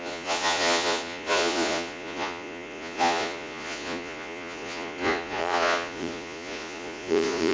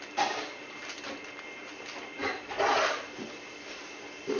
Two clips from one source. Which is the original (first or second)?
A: second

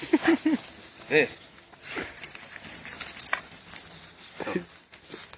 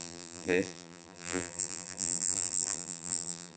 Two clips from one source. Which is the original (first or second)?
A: first